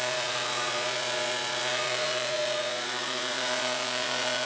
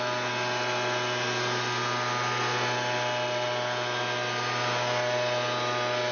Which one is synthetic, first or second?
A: first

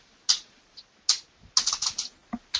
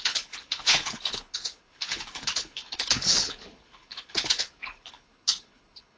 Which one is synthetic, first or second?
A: second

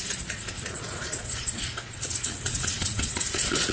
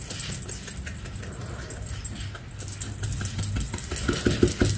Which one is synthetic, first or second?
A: first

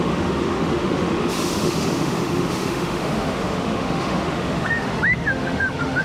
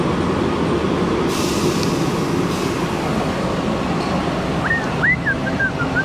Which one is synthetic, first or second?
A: first